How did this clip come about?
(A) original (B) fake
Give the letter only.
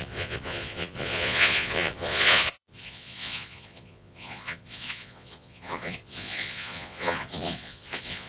B